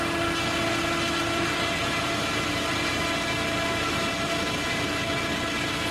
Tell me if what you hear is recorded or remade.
recorded